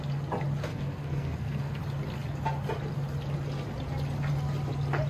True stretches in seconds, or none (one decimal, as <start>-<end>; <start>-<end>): 0.0-0.7; 1.8-5.1